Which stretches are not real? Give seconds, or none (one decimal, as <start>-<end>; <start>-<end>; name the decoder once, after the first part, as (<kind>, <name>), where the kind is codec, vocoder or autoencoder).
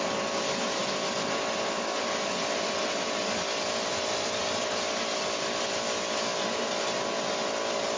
none